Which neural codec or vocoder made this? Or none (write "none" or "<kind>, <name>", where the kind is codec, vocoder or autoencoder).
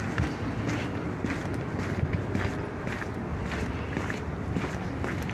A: none